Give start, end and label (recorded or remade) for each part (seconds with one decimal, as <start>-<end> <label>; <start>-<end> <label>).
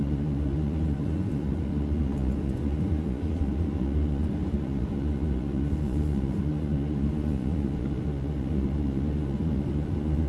0.0-10.3 remade